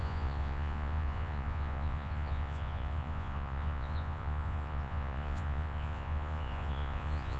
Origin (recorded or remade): remade